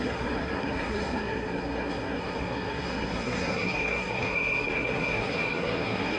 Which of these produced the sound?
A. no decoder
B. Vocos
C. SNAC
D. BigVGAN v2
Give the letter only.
C